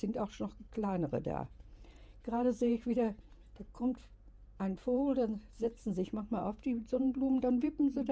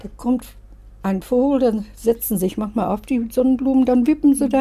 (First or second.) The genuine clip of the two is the second